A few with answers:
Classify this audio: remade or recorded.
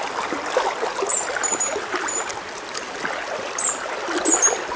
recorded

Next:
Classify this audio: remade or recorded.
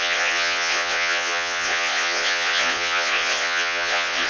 remade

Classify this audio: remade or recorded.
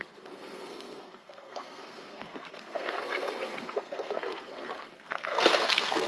remade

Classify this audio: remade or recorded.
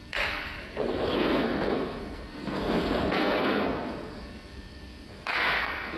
remade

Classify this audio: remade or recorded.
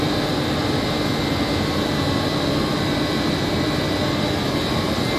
recorded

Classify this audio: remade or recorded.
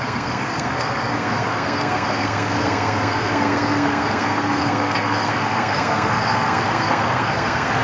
remade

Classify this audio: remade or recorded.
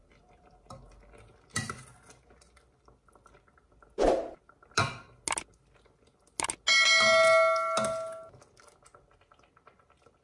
recorded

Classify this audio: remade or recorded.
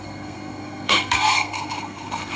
remade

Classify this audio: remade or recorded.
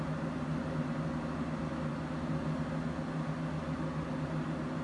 recorded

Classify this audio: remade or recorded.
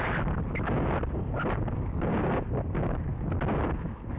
recorded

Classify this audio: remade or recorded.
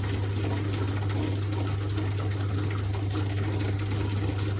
recorded